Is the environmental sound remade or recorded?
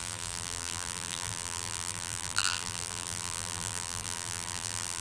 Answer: remade